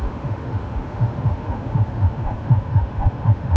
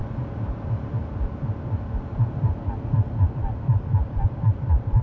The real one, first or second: second